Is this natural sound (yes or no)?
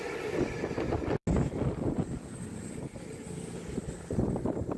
yes